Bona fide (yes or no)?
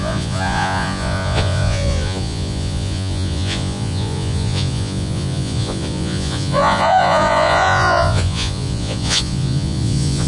no